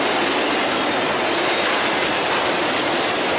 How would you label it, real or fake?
real